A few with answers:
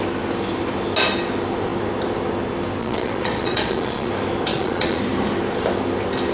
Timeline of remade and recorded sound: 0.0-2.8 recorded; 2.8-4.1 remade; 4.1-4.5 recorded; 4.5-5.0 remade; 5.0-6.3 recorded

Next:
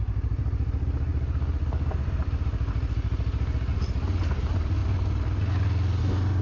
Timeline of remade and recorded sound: 0.0-6.4 recorded

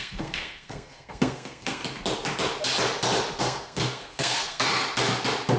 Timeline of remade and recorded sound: 0.0-1.8 remade; 1.8-3.4 recorded; 3.4-4.7 remade; 4.7-5.6 recorded

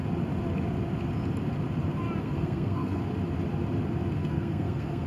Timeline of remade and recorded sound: 0.0-2.2 recorded; 2.2-3.0 remade; 3.0-4.2 recorded; 4.2-5.1 remade

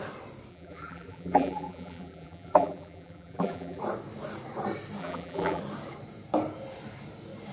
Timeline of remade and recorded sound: 0.0-0.5 recorded; 0.5-3.8 remade; 3.8-5.0 recorded; 5.0-5.6 remade; 5.6-7.5 recorded

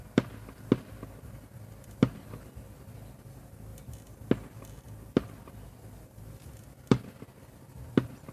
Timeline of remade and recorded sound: 0.0-8.3 recorded

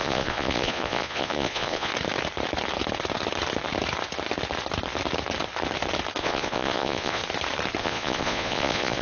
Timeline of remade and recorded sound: 0.0-1.9 remade; 1.9-6.2 recorded; 6.2-7.2 remade; 7.2-7.8 recorded; 7.8-9.0 remade

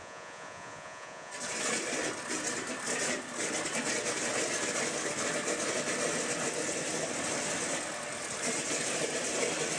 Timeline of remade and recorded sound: 0.0-1.3 remade; 1.3-9.8 recorded